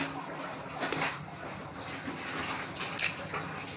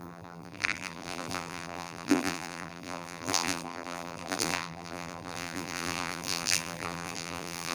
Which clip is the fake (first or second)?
second